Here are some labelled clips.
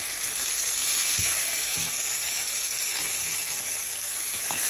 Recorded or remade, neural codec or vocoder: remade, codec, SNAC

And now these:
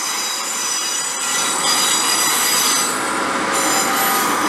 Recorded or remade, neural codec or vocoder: recorded